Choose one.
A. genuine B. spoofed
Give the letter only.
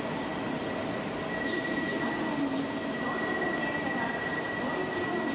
A